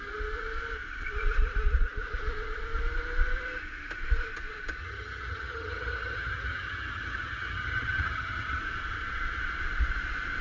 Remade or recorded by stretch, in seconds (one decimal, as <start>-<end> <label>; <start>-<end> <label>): 0.0-4.8 recorded; 4.8-8.6 remade; 8.6-10.4 recorded